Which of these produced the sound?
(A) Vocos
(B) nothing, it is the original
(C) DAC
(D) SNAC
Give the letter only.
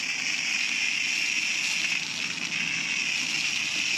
B